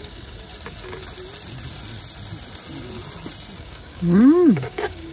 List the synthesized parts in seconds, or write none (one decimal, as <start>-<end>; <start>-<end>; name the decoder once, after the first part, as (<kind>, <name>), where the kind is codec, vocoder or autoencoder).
0.0-0.5 (codec, DAC); 3.6-5.1